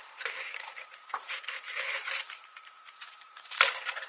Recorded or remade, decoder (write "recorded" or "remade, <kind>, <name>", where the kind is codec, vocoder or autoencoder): remade, vocoder, BigVGAN v2